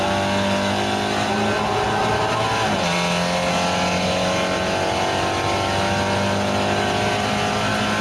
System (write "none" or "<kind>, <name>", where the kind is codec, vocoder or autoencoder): none